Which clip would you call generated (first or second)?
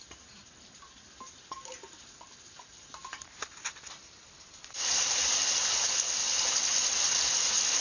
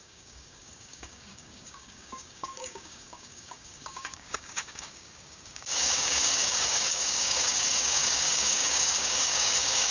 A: second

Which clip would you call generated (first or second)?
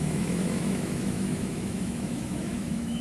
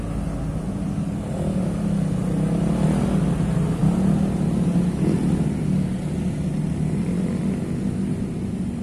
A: first